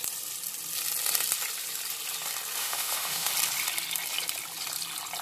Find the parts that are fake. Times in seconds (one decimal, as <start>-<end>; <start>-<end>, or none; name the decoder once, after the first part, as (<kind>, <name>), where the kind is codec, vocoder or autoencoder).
2.6-3.3 (autoencoder, DAC-VAE)